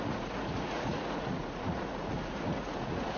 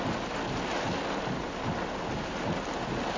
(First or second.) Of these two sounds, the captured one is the second